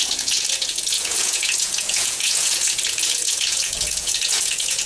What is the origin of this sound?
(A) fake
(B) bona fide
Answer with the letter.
A